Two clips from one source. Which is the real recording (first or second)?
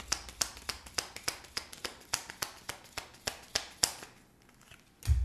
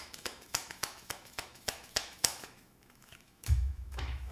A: first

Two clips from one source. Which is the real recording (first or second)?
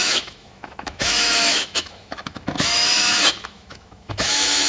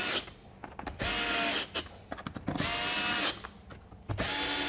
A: second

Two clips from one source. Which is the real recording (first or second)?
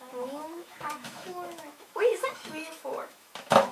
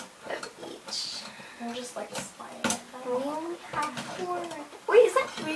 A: second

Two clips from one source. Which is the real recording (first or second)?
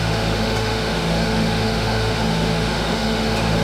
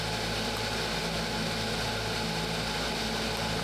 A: second